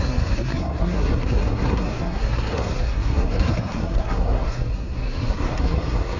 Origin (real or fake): fake